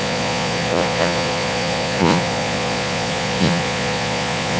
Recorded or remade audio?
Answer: remade